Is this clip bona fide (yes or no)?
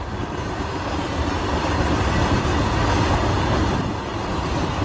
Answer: yes